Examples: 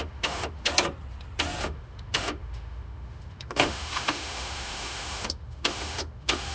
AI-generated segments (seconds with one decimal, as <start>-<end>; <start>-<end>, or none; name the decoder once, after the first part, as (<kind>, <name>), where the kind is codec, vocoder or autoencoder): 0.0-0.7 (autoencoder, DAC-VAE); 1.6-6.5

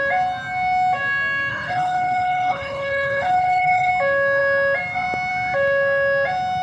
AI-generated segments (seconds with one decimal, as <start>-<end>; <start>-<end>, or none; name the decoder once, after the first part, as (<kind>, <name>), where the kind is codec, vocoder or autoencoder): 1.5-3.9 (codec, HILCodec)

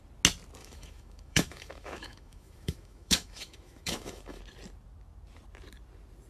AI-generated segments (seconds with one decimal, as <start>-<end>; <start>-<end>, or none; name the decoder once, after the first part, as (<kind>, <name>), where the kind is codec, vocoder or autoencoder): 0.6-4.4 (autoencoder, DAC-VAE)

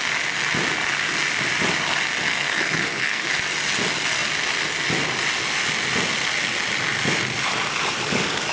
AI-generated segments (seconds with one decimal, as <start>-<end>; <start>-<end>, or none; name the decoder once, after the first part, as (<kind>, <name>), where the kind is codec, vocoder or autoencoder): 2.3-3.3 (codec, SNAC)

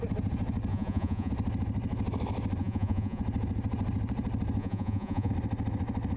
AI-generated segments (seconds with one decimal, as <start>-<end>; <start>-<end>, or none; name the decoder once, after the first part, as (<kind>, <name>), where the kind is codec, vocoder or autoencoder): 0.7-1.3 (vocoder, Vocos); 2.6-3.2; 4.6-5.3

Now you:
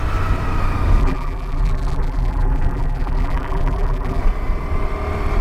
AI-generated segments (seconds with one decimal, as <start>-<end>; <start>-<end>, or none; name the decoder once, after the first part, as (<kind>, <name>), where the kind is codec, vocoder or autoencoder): 1.0-4.2 (vocoder, BigVGAN v2)

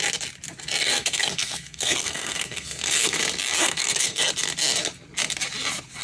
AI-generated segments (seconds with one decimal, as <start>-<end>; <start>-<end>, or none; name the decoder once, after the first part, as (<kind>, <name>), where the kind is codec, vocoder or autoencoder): 0.8-3.2 (codec, SNAC); 3.6-4.3

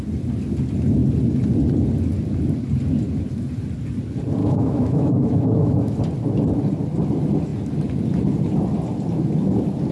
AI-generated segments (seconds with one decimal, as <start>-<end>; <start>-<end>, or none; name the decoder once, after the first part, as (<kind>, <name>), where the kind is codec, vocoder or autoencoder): 4.4-6.0 (autoencoder, DAC-VAE)